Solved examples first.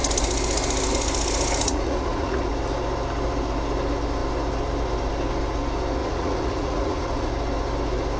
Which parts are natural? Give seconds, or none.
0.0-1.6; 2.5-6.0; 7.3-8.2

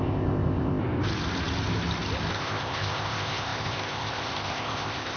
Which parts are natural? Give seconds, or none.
0.8-2.3

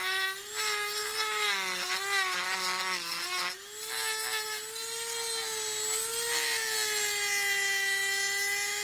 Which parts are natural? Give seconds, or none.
0.0-8.8

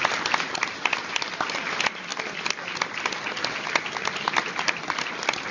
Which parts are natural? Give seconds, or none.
2.1-5.5

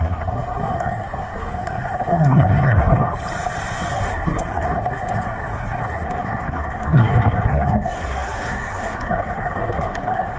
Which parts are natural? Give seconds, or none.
3.1-3.9